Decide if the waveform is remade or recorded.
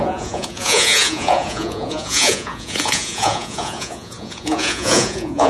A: remade